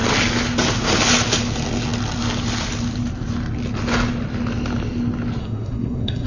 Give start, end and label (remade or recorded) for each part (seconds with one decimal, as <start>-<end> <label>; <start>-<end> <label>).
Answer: 0.0-5.4 recorded; 5.4-6.3 remade